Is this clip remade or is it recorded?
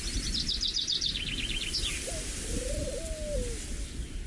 recorded